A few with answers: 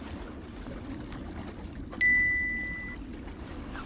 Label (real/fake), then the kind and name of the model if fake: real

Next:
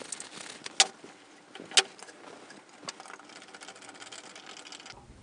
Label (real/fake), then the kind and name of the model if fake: real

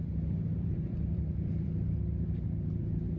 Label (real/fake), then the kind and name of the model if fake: fake, vocoder, BigVGAN v2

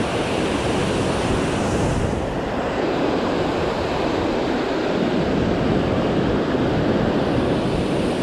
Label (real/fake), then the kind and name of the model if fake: real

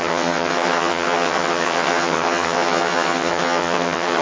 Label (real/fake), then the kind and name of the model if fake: fake, vocoder, HiFi-GAN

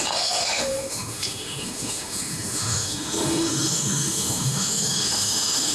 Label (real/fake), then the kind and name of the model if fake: fake, autoencoder, DAC-VAE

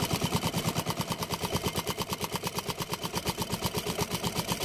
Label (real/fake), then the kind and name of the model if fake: real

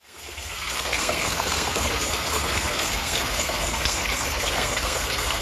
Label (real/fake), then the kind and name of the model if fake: fake, codec, SNAC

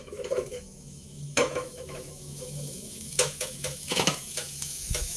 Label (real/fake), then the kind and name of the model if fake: fake, autoencoder, DAC-VAE